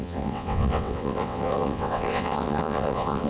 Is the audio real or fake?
fake